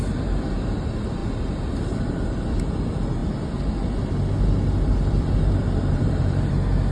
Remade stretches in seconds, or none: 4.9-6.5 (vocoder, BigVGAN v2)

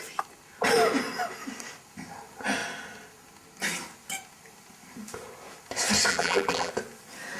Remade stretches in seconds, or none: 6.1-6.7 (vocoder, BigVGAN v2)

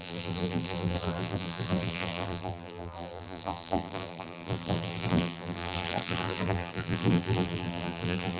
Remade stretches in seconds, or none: 0.0-8.4 (vocoder, BigVGAN v2)

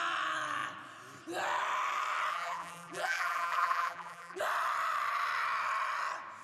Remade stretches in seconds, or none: 2.3-4.4 (vocoder, BigVGAN v2)

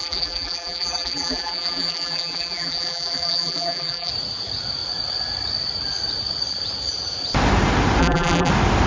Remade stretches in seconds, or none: 0.0-4.1 (vocoder, BigVGAN v2); 8.0-8.5